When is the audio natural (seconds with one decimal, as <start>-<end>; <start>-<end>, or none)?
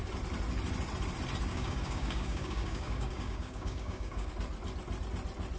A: 0.0-1.5; 4.3-5.6